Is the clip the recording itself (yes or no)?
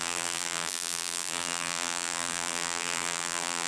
no